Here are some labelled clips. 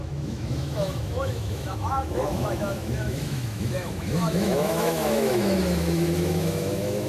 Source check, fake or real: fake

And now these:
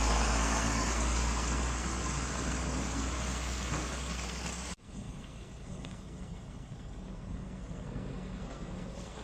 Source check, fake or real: fake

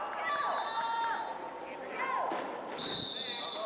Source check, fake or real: real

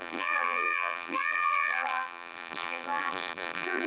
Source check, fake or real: fake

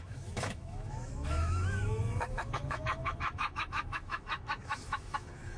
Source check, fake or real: fake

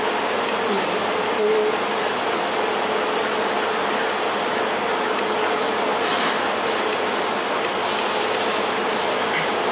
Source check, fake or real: real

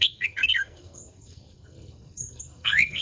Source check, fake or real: fake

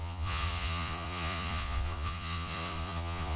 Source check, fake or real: fake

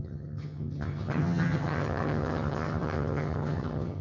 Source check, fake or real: fake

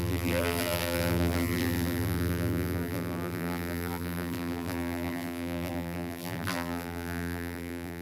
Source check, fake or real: fake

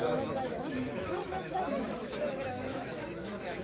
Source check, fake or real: fake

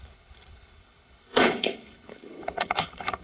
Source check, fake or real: fake